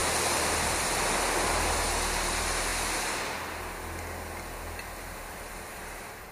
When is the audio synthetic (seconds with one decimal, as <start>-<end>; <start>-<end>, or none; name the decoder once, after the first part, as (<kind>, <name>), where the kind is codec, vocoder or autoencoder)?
0.5-2.7 (vocoder, BigVGAN v2); 5.4-6.3